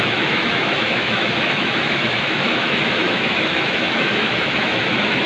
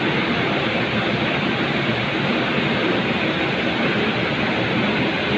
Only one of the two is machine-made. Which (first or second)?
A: first